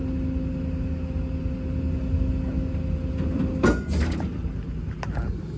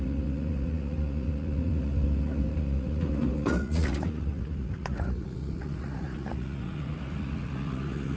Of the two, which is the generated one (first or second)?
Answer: second